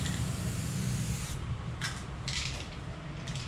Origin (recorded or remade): remade